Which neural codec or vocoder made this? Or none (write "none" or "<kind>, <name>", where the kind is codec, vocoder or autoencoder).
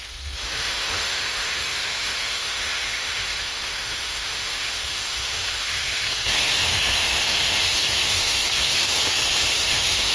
autoencoder, DAC-VAE